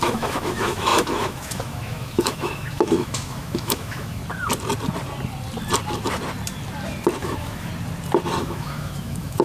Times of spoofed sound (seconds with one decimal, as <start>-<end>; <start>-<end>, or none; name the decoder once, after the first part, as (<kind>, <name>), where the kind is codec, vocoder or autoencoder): 0.0-4.2 (autoencoder, DAC-VAE); 7.2-7.7; 8.4-9.4